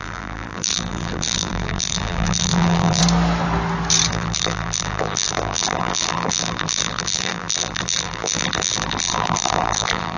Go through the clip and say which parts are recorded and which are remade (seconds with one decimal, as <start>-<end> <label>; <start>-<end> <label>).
0.0-3.0 remade; 3.0-4.1 recorded; 4.1-10.2 remade